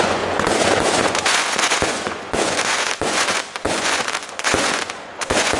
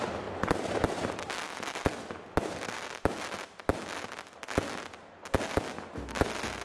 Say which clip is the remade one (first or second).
first